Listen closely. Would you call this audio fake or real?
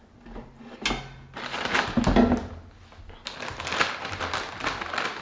real